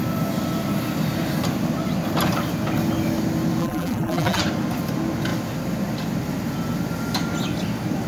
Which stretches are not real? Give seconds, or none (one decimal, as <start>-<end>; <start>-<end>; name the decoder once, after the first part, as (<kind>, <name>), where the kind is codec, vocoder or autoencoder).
3.6-4.4 (vocoder, BigVGAN v2)